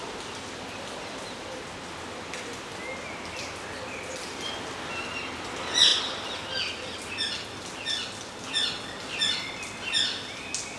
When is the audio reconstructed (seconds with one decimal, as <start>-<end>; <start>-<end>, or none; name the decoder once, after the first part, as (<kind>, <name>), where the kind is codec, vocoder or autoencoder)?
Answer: none